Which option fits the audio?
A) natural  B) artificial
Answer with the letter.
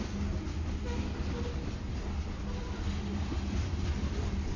A